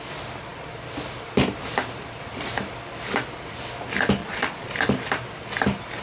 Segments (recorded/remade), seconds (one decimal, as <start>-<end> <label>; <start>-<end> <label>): 0.0-4.2 recorded; 4.2-4.7 remade; 4.7-6.0 recorded